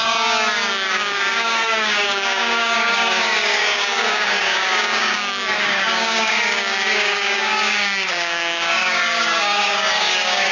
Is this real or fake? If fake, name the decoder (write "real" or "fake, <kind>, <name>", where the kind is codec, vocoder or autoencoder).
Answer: fake, codec, DAC